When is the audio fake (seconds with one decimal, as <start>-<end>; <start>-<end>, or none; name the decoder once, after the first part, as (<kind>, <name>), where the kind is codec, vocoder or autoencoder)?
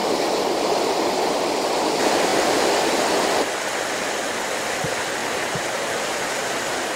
5.2-6.2 (vocoder, BigVGAN v2)